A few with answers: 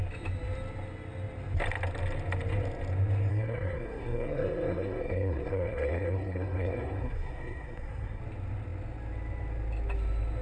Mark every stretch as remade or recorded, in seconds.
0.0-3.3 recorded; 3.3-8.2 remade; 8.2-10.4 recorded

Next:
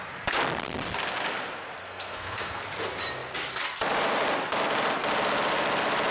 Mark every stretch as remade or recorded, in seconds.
0.0-1.8 recorded; 1.8-2.6 remade; 2.6-6.1 recorded

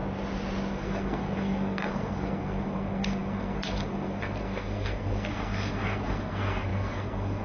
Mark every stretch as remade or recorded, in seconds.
0.0-0.7 recorded; 0.7-7.4 remade